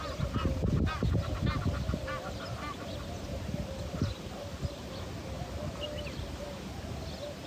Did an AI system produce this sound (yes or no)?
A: no